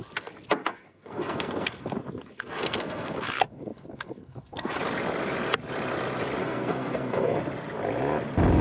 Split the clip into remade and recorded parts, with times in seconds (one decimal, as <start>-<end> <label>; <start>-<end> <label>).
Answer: 0.0-0.6 recorded; 0.6-4.7 remade; 4.7-6.4 recorded; 6.4-7.4 remade; 7.4-8.6 recorded